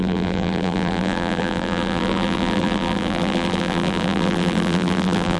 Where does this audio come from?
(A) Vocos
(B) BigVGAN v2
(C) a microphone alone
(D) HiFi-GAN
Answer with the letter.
B